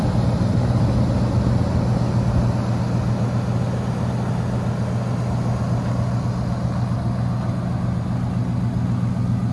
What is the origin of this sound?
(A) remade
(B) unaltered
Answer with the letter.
B